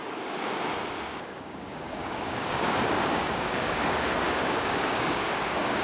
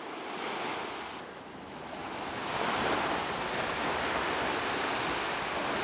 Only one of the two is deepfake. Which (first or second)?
first